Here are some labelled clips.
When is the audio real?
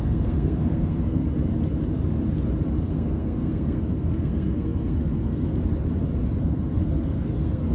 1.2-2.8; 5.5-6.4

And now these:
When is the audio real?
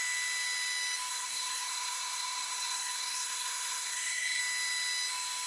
0.0-1.1; 4.4-5.5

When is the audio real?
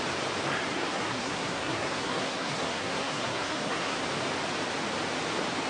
0.0-0.7; 4.0-5.7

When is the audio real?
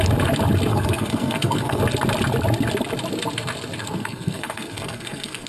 0.0-0.7; 1.8-3.8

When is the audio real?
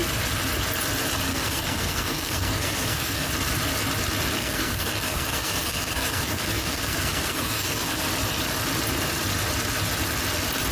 0.0-1.3; 3.3-4.4; 8.0-10.7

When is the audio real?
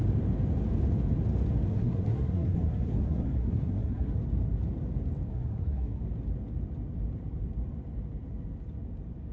0.0-1.7; 4.1-5.3; 6.0-9.3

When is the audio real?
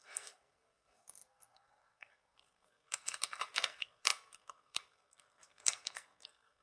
none